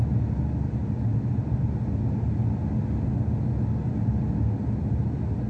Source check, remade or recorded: recorded